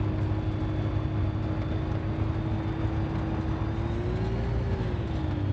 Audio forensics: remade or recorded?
recorded